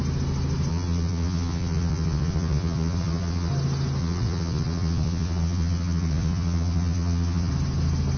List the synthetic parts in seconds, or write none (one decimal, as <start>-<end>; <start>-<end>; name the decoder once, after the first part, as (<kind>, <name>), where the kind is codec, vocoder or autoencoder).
0.7-3.5 (vocoder, Vocos); 4.0-7.5